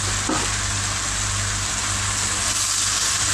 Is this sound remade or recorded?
recorded